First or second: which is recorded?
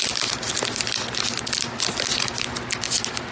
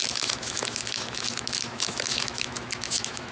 first